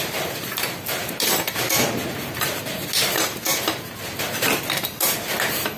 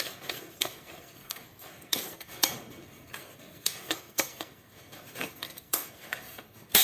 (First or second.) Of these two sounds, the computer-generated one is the second